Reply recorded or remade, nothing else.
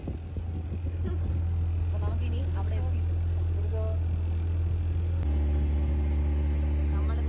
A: recorded